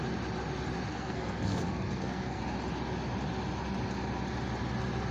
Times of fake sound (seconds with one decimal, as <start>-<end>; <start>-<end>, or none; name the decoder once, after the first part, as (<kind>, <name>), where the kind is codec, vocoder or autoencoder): 0.9-2.4 (codec, SNAC)